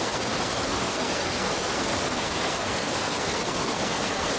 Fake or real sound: fake